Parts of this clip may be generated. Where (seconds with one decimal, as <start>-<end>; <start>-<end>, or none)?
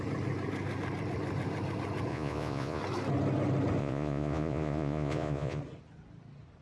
2.1-2.8; 3.8-5.6